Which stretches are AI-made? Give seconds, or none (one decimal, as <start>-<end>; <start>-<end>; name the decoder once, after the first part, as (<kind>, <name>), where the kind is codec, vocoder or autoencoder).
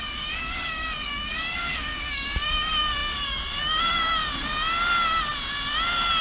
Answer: 0.0-4.2 (codec, DAC)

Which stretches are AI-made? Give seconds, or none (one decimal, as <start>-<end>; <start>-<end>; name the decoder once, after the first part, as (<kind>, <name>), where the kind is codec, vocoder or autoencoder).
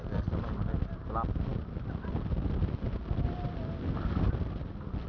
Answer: none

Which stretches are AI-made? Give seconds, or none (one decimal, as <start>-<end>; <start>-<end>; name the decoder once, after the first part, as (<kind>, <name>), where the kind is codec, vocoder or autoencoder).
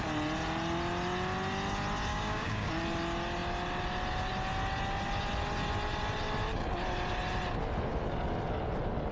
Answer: 2.1-2.7 (codec, DAC)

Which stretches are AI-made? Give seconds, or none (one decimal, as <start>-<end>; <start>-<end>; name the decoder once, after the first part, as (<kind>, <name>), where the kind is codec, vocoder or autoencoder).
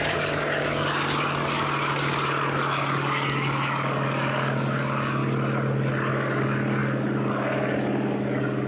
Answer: 0.0-5.2 (codec, DAC); 6.1-8.7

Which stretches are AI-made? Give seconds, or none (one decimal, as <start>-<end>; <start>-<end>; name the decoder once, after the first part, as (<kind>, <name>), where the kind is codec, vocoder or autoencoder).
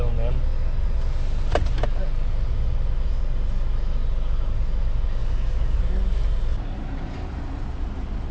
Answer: 5.2-5.8 (codec, DAC)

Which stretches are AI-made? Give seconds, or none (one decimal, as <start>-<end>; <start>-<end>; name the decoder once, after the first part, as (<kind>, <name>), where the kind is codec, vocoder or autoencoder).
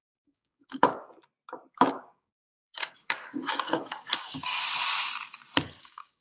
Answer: 0.0-0.9 (codec, DAC); 1.7-4.5; 5.8-6.2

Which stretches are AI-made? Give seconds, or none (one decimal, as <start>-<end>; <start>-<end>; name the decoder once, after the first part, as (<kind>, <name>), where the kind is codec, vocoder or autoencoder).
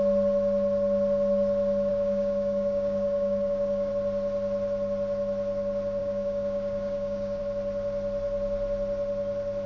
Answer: 1.9-3.9 (codec, DAC); 6.0-7.4